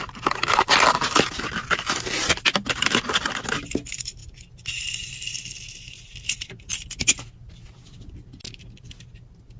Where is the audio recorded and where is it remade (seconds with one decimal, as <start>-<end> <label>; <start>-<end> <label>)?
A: 0.0-9.6 recorded